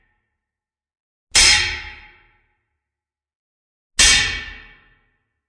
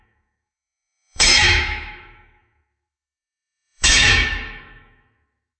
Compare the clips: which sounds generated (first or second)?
second